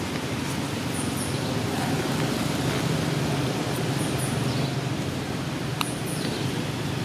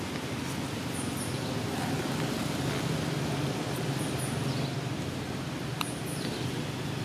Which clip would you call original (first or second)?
second